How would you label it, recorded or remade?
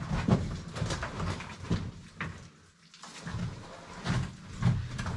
recorded